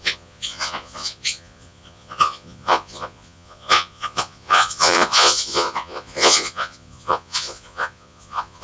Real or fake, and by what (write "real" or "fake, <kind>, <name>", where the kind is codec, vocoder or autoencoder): fake, vocoder, Vocos